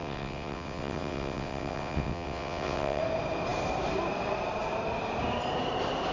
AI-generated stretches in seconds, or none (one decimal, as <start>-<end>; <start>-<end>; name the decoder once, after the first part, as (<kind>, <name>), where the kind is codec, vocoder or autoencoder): 0.0-3.0 (vocoder, WaveNeXt)